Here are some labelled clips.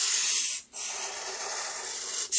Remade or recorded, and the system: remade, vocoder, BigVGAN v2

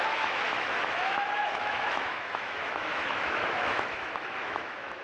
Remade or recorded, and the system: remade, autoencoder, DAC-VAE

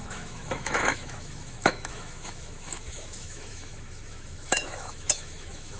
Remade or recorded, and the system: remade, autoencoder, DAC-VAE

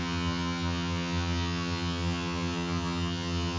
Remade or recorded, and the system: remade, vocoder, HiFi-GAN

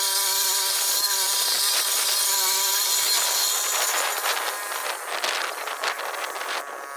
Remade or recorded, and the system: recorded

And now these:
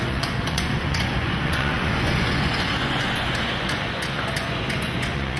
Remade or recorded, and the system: remade, vocoder, Vocos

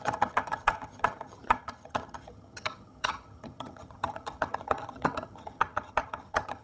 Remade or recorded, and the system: remade, vocoder, HiFi-GAN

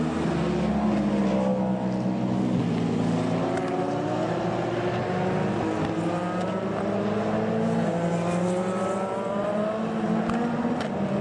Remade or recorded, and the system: recorded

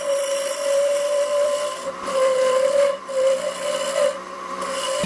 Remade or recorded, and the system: remade, vocoder, BigVGAN v2